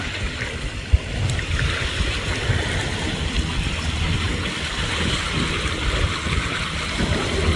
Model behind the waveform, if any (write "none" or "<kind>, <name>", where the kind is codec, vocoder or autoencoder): none